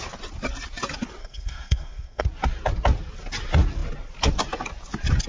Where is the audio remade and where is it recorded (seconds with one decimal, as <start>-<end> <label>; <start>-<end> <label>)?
0.0-1.2 recorded; 1.2-2.2 remade; 2.2-5.3 recorded